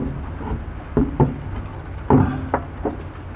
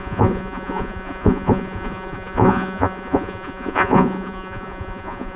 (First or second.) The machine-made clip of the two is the second